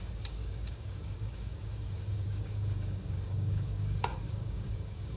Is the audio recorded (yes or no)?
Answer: no